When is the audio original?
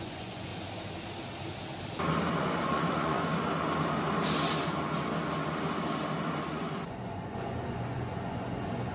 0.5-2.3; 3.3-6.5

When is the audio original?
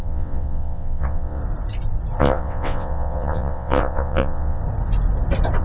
1.4-2.2; 4.6-5.6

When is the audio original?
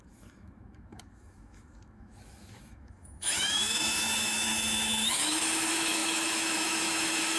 none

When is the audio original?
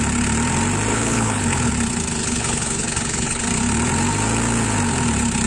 0.0-0.9; 1.7-2.2; 3.4-5.5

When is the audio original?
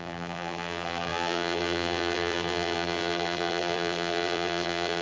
none